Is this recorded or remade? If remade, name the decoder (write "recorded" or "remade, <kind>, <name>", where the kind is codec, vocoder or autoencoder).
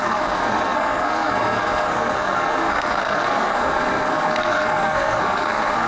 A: remade, codec, SNAC